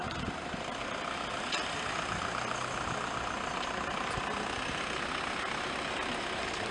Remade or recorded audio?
recorded